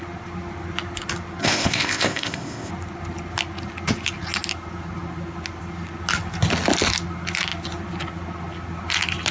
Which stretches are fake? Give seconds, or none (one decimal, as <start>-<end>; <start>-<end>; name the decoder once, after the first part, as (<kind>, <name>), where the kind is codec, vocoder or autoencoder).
1.4-2.7 (codec, ZipCodec)